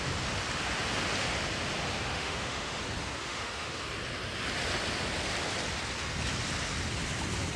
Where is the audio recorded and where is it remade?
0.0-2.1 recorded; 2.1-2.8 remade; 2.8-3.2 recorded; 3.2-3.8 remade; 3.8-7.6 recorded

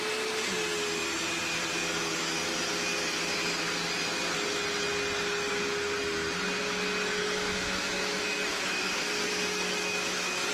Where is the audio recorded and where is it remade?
0.0-7.2 recorded; 7.2-10.5 remade

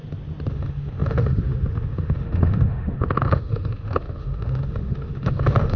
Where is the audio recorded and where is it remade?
0.0-0.5 recorded; 0.5-5.8 remade

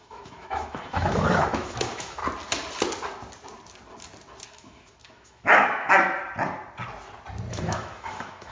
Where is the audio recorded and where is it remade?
0.0-2.2 remade; 2.2-4.5 recorded; 4.5-6.2 remade; 6.2-7.5 recorded; 7.5-8.5 remade

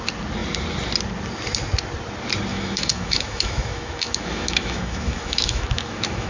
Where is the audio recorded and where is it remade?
0.0-2.5 recorded; 2.5-6.3 remade

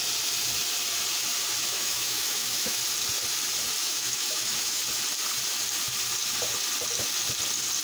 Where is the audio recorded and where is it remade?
0.0-1.6 recorded; 1.6-2.8 remade; 2.8-3.8 recorded; 3.8-4.8 remade; 4.8-7.8 recorded